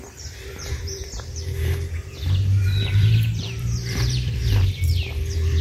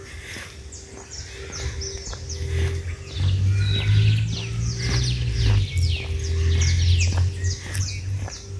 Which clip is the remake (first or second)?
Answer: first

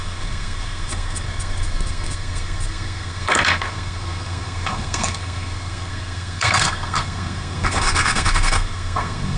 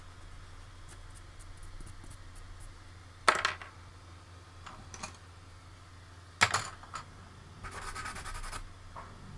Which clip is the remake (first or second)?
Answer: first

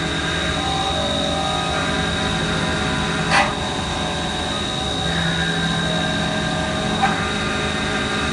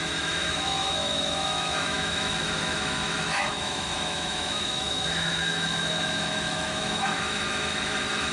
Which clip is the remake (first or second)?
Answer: second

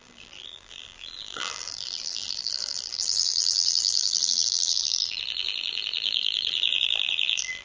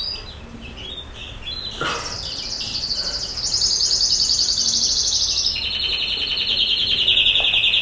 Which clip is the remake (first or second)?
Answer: first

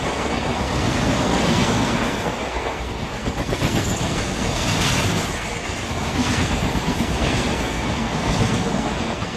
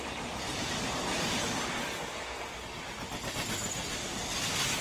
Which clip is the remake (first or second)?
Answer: first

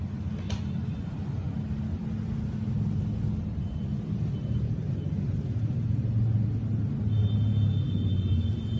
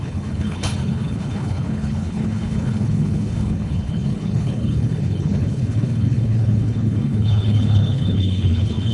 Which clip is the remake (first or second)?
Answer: second